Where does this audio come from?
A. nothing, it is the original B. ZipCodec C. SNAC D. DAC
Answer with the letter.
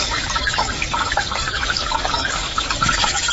D